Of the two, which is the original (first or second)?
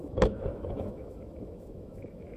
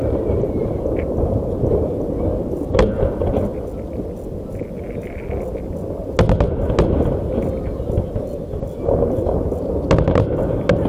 second